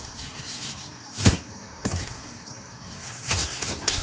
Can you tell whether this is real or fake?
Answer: fake